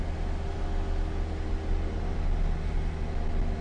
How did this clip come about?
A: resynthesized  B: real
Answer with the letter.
B